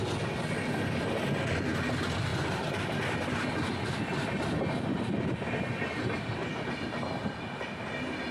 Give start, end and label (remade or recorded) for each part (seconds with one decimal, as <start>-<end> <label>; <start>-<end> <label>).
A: 0.0-8.3 recorded